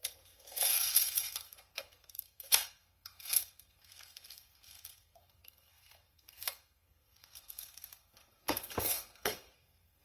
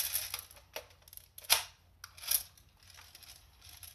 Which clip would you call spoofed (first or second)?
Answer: first